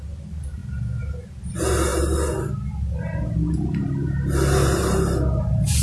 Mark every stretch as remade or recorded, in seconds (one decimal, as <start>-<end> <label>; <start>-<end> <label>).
0.0-5.8 recorded